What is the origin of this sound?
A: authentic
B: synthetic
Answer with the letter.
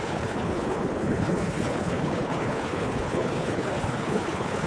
B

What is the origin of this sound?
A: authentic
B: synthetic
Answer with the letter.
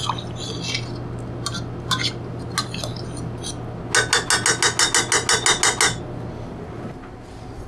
A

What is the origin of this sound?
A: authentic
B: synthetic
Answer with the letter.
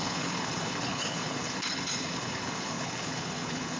B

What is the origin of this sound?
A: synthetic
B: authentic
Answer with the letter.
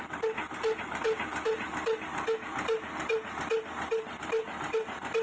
B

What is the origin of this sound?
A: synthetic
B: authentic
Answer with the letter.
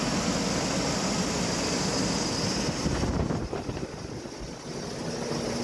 B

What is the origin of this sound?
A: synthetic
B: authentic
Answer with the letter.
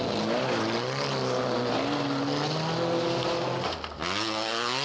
B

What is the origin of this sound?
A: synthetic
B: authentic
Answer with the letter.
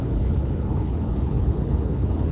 A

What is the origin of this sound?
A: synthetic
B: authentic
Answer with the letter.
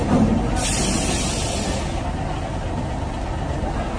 B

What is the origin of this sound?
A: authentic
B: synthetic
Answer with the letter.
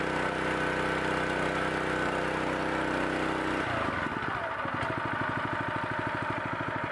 A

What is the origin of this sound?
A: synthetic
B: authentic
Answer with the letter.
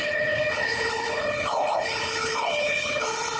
A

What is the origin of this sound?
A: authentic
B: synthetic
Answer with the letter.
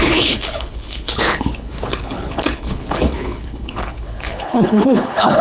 B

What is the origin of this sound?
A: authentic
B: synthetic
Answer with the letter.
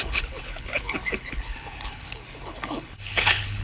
B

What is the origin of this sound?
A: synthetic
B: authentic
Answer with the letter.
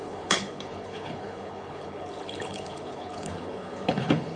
A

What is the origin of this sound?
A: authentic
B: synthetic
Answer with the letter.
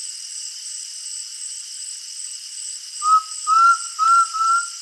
A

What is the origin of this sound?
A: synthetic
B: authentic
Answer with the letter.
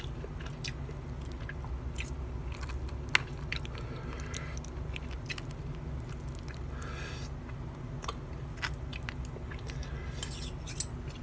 B